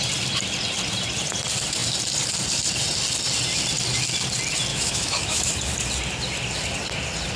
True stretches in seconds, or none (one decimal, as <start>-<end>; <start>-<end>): 0.0-4.7; 5.5-7.4